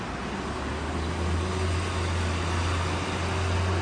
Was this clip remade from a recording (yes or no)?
no